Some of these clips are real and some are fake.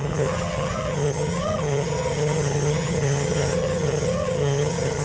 fake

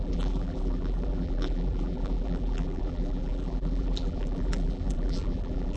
fake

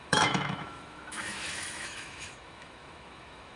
fake